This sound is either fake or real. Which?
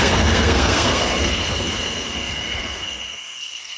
fake